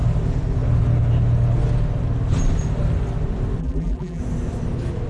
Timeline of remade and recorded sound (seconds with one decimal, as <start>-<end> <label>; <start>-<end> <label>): 0.0-3.6 recorded; 3.6-4.2 remade; 4.2-5.1 recorded